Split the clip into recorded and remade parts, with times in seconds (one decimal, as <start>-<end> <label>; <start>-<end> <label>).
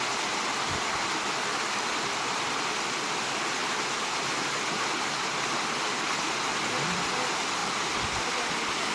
0.0-8.9 recorded